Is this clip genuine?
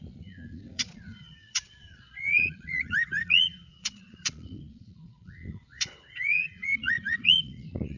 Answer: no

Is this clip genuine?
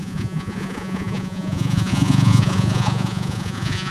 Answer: no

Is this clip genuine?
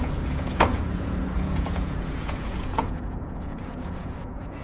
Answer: no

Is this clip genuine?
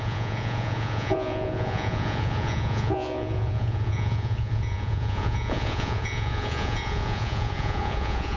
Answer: no